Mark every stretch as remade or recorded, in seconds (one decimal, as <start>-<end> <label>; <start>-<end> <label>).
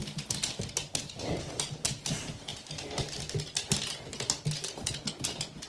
0.0-5.7 recorded